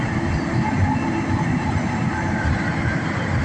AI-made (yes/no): yes